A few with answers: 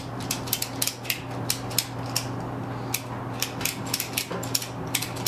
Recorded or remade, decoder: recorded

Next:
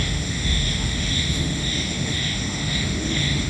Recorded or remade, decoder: remade, autoencoder, DAC-VAE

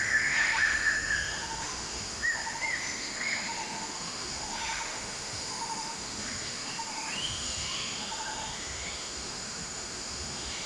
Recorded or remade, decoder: remade, autoencoder, DAC-VAE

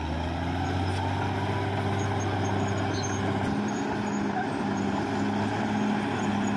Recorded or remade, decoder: recorded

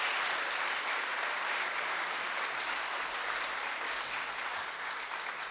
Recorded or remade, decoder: recorded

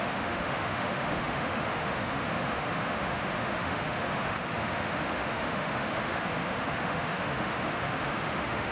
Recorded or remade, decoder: remade, autoencoder, DAC-VAE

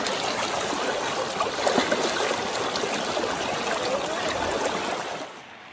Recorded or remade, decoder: recorded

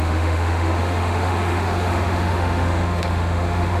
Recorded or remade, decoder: remade, autoencoder, DAC-VAE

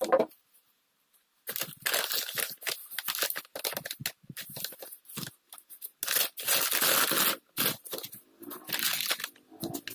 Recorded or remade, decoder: recorded